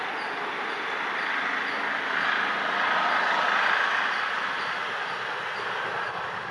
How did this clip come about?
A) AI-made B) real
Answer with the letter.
B